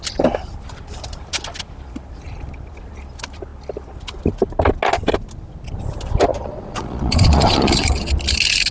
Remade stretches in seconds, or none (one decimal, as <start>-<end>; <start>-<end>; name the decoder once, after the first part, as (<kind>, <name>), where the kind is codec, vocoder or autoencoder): 6.3-8.1 (vocoder, Vocos)